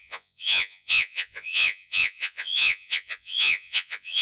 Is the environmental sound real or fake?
fake